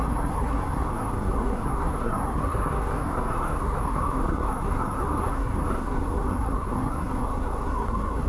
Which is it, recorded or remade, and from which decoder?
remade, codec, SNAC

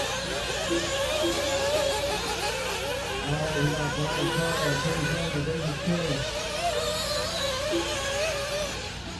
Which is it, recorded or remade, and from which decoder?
recorded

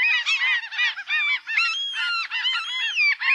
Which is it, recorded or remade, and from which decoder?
recorded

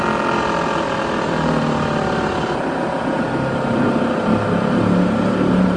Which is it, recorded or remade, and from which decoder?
recorded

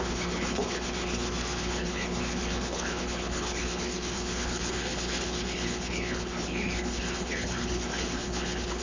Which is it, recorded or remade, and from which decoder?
remade, codec, HILCodec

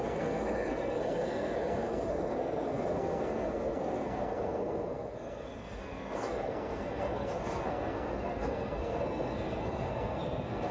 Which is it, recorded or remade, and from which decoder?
remade, codec, SNAC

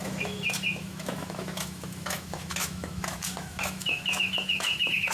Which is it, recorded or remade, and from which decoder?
remade, autoencoder, DAC-VAE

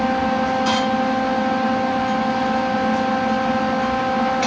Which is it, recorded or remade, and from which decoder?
recorded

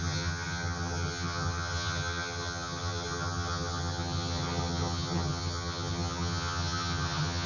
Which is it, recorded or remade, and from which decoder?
remade, vocoder, HiFi-GAN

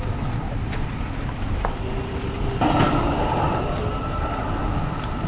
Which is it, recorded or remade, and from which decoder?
recorded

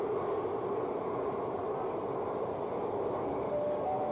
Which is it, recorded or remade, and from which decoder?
recorded